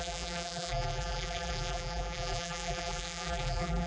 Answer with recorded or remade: remade